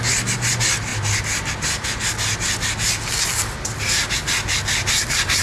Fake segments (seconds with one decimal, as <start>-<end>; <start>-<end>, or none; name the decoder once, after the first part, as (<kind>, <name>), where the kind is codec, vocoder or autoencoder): none